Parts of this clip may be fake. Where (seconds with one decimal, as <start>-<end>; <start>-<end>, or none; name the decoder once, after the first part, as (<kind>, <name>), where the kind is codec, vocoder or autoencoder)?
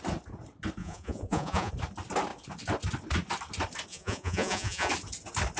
0.8-1.7 (vocoder, Vocos); 3.9-4.9